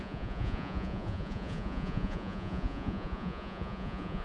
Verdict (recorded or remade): remade